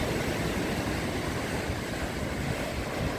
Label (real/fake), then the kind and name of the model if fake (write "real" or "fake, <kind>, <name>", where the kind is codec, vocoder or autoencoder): real